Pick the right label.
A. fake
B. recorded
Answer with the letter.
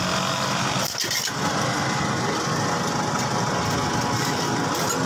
B